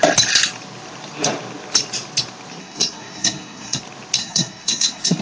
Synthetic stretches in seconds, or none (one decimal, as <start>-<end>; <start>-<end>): 2.6-3.8; 4.2-5.2